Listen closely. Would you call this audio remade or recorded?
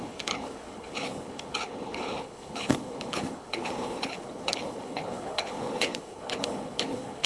remade